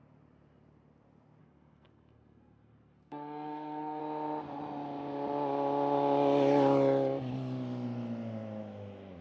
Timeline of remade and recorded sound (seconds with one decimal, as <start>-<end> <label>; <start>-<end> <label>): 0.0-1.4 recorded; 1.4-4.0 remade; 4.0-9.2 recorded